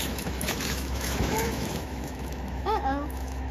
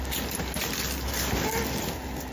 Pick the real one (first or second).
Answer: second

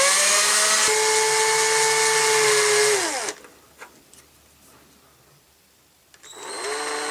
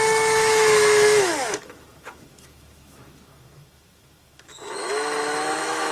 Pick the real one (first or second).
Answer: first